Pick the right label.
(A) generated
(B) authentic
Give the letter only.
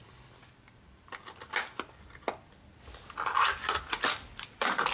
B